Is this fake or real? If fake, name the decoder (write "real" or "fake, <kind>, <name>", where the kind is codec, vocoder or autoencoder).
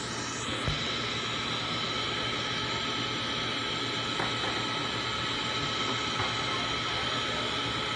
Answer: real